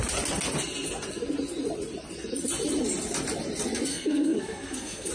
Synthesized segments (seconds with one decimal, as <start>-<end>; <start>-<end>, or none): 3.9-5.1